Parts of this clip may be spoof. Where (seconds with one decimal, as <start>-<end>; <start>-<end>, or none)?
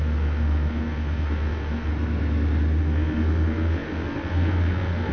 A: 0.0-1.9; 2.8-5.1